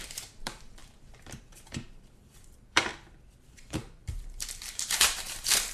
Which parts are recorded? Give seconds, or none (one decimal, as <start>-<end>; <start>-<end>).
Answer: 2.9-3.5